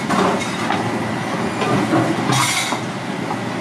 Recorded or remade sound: recorded